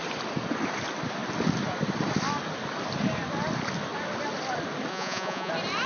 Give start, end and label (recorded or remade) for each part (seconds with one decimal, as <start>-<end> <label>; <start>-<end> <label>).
0.0-4.9 recorded; 4.9-5.5 remade; 5.5-5.9 recorded